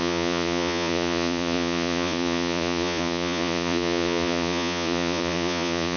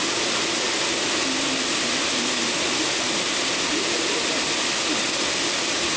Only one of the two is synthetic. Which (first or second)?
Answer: first